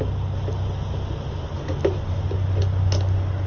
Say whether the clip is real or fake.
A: real